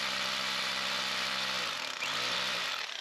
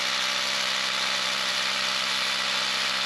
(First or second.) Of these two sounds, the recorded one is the second